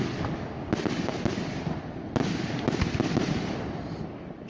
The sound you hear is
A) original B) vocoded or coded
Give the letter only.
A